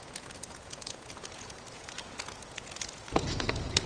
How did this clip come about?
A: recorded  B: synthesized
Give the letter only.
B